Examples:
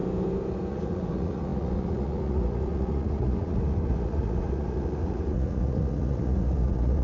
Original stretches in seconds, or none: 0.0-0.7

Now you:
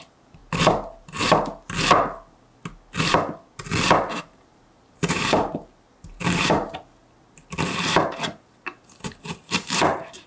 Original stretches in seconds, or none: 0.4-4.2; 7.0-9.4

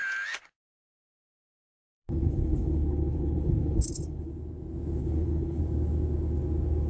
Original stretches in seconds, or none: 0.0-1.5; 4.3-5.0; 5.6-6.9